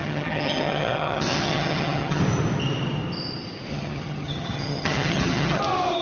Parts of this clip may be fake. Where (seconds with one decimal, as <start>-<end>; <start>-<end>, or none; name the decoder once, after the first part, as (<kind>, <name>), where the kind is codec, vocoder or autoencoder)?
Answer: 0.0-2.2 (vocoder, HiFi-GAN); 3.7-5.6